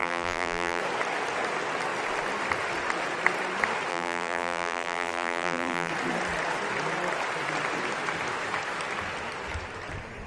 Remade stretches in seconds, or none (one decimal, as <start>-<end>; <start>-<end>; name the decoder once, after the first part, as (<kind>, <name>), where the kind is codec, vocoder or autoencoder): 0.0-0.8 (vocoder, BigVGAN v2); 3.9-5.9